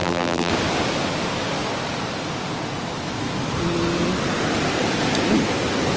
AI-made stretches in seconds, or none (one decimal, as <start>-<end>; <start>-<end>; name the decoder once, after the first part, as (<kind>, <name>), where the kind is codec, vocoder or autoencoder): 0.0-0.5 (vocoder, BigVGAN v2)